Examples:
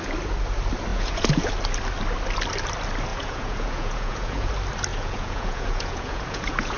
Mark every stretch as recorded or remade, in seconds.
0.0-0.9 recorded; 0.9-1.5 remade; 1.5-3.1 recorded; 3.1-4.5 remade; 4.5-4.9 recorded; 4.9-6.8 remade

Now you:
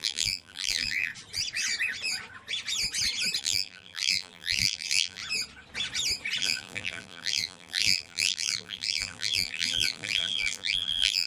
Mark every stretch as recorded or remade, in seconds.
0.0-1.1 remade; 1.1-3.4 recorded; 3.4-5.2 remade; 5.2-6.4 recorded; 6.4-11.3 remade

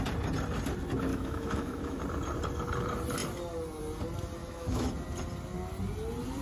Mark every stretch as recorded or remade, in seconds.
0.0-1.1 recorded; 1.1-2.0 remade; 2.0-4.4 recorded; 4.4-4.9 remade; 4.9-6.4 recorded

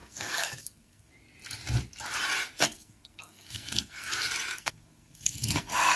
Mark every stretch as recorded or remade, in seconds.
0.0-1.1 remade; 1.1-2.5 recorded; 2.5-4.1 remade; 4.1-4.5 recorded; 4.5-6.0 remade

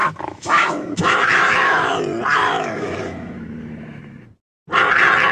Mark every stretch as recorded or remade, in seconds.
0.0-2.0 remade; 2.0-2.4 recorded; 2.4-4.0 remade; 4.0-5.3 recorded

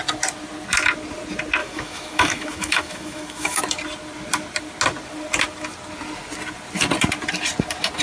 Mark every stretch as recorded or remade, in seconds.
0.0-1.6 recorded; 1.6-3.6 remade; 3.6-8.0 recorded

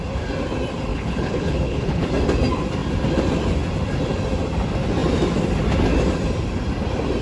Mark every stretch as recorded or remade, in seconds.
0.0-0.9 recorded; 0.9-2.1 remade; 2.1-7.2 recorded